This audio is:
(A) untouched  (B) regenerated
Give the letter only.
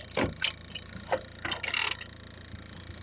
A